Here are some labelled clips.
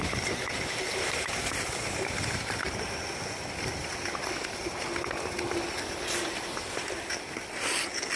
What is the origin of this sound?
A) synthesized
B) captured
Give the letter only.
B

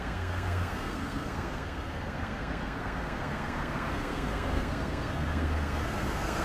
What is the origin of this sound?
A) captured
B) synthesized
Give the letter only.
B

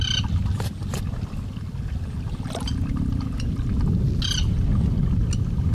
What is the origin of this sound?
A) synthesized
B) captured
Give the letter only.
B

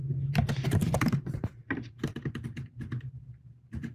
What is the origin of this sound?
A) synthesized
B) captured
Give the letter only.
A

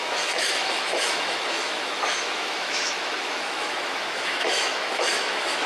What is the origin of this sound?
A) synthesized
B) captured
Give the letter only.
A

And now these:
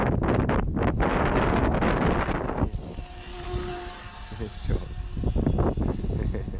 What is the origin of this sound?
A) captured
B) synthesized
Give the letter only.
A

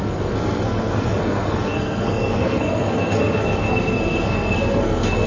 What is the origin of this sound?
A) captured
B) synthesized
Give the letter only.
B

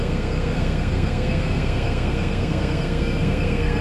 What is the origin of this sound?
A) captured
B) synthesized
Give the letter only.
B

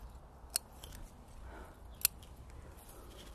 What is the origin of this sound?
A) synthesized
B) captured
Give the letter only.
B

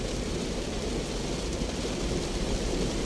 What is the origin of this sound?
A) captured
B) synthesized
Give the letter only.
A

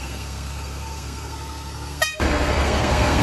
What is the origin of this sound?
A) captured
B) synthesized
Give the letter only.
B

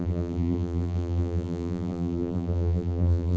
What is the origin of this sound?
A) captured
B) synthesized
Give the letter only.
B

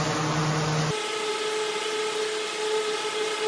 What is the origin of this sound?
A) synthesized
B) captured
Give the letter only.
B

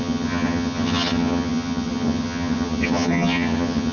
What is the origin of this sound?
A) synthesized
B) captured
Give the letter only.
A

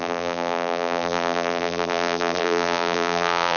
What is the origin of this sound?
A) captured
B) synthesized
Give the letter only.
B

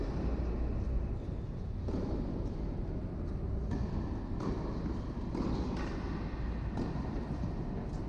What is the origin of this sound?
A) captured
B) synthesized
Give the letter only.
A